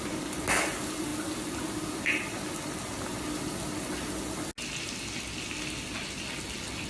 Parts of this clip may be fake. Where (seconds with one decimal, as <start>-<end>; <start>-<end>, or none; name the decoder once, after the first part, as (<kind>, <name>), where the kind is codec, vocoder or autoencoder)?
none

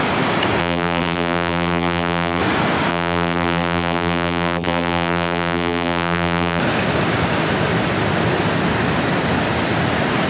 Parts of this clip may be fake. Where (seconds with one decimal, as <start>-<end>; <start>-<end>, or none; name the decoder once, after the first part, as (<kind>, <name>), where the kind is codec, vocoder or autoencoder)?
0.6-2.4 (vocoder, BigVGAN v2); 2.9-6.6

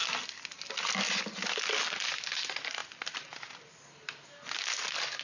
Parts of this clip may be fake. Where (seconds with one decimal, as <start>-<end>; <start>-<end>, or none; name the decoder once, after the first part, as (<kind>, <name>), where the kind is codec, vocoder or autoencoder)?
none

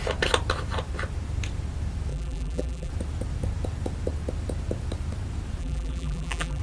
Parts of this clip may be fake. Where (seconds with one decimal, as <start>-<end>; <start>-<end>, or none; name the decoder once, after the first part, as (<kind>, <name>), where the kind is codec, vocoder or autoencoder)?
2.1-2.9 (vocoder, BigVGAN v2); 5.6-6.6

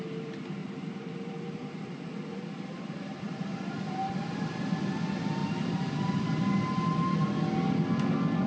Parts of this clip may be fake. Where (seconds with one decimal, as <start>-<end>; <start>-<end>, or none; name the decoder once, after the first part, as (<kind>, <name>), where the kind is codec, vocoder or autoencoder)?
0.6-2.0 (vocoder, BigVGAN v2)

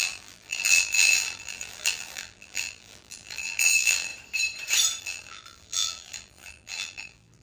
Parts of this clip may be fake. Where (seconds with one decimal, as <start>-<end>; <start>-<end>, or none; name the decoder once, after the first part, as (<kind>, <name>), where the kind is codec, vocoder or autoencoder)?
0.0-4.1 (vocoder, BigVGAN v2); 5.0-7.4

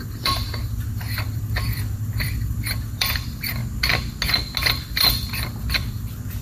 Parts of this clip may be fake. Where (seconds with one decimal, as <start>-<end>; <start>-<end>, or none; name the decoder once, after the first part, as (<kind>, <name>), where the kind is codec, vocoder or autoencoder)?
0.0-3.6 (vocoder, BigVGAN v2); 4.7-6.4

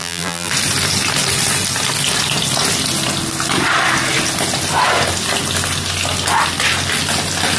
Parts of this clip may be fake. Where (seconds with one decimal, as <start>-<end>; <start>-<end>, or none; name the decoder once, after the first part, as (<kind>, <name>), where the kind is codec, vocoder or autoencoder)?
0.0-0.5 (vocoder, BigVGAN v2)